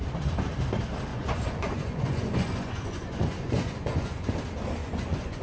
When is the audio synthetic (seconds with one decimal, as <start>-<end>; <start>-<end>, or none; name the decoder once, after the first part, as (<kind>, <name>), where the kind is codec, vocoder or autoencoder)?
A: 1.1-4.3 (vocoder, Vocos); 4.8-5.4